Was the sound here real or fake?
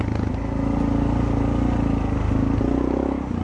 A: real